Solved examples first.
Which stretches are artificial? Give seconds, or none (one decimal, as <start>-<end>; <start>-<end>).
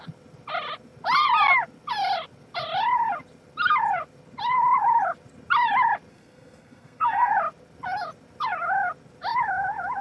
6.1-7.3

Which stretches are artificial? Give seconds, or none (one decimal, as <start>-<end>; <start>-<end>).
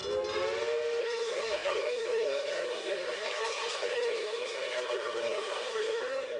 1.0-6.4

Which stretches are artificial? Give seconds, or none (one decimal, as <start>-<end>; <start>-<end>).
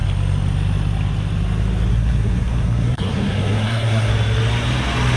1.9-4.1